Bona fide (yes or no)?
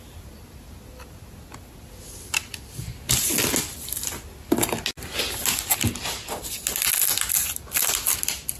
yes